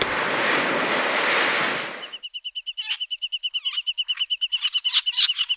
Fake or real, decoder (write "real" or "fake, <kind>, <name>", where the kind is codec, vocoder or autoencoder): real